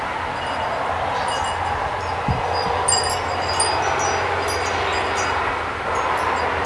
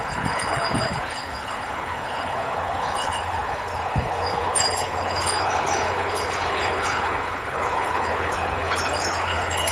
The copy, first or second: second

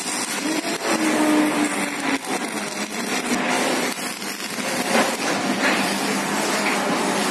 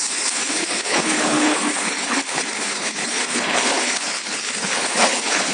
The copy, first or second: second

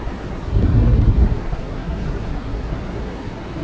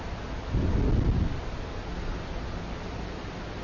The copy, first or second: first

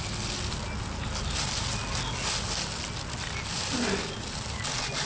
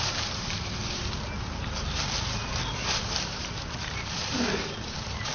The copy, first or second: second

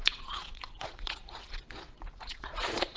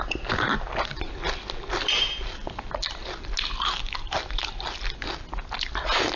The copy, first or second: first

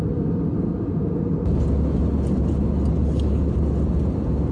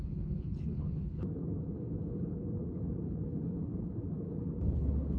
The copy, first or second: second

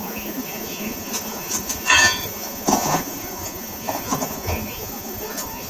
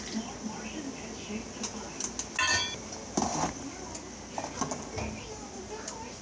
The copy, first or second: first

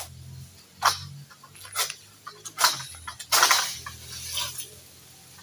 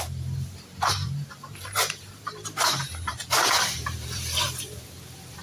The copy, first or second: second